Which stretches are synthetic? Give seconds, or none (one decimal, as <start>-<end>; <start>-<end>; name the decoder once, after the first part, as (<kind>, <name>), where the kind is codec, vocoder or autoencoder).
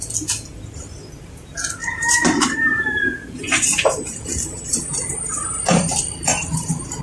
1.8-6.0 (vocoder, BigVGAN v2); 6.4-7.0